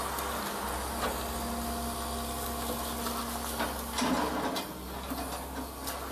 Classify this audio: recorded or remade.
recorded